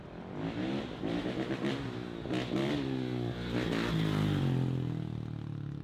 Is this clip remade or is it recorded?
recorded